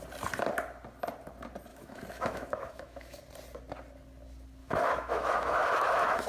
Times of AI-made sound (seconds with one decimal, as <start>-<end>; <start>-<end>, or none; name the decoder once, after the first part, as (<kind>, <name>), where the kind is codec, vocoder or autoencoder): 1.7-3.2 (autoencoder, DAC-VAE); 4.6-6.3